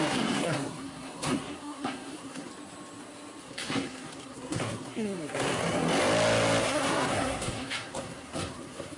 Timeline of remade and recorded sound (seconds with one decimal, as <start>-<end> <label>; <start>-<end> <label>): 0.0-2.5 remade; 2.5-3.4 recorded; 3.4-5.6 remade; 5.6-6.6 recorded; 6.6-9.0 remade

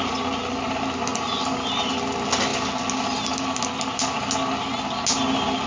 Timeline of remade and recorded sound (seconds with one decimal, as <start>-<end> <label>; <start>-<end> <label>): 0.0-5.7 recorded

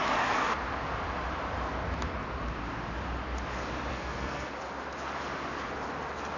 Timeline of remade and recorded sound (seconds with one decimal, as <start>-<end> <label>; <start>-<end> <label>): 0.0-3.9 recorded; 3.9-4.5 remade; 4.5-6.4 recorded

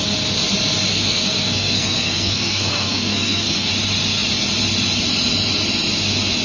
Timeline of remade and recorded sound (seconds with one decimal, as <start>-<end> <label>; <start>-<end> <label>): 0.0-0.9 recorded; 0.9-3.7 remade; 3.7-6.4 recorded

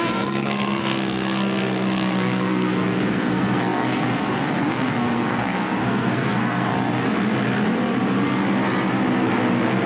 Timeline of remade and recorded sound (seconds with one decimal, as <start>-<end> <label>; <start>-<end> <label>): 0.0-6.7 remade; 6.7-9.9 recorded